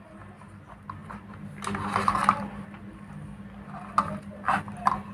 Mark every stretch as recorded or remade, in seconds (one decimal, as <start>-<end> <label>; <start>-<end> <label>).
0.0-5.1 recorded